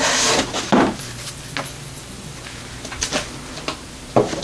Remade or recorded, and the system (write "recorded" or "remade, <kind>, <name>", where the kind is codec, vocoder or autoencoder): recorded